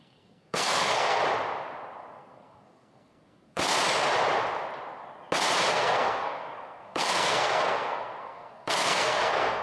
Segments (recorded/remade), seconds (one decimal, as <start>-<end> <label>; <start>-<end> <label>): 0.0-1.2 remade; 1.2-2.1 recorded; 2.1-3.6 remade; 3.6-5.7 recorded; 5.7-9.6 remade